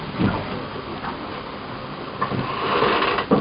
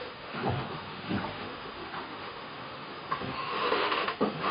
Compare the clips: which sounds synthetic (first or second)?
second